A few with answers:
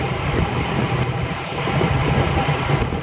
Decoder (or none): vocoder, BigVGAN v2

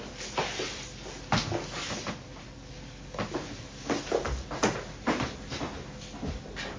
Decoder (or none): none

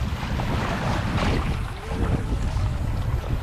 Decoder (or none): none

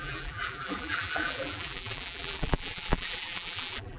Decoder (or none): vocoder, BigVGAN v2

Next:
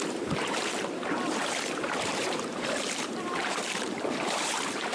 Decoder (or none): vocoder, BigVGAN v2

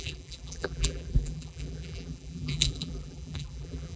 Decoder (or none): vocoder, BigVGAN v2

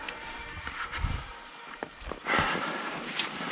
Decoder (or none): vocoder, BigVGAN v2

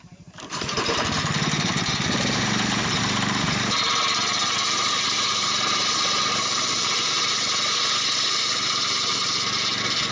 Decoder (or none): vocoder, BigVGAN v2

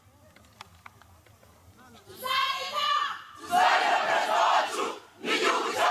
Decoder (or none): none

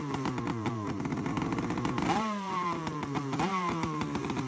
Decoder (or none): vocoder, BigVGAN v2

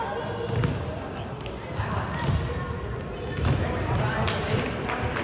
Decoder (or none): none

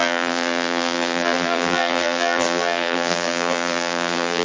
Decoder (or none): vocoder, BigVGAN v2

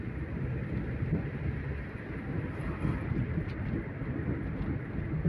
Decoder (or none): vocoder, BigVGAN v2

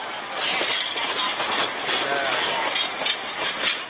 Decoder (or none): none